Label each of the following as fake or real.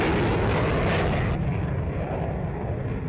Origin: real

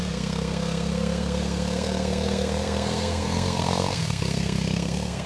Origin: fake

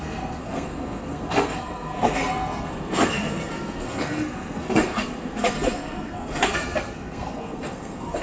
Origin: fake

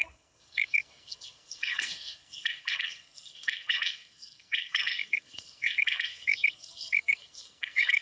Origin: fake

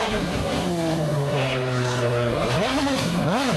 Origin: fake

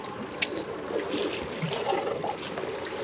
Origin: real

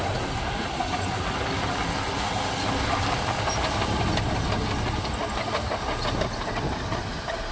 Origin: real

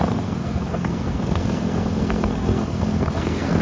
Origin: fake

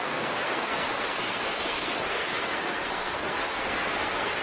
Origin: fake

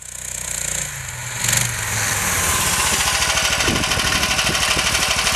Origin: real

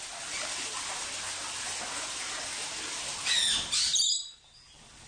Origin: real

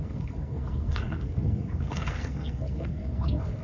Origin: fake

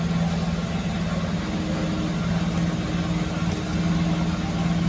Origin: real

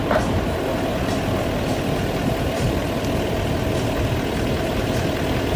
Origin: real